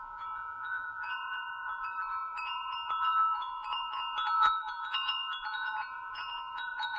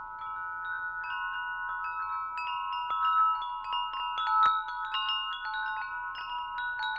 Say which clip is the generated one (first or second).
first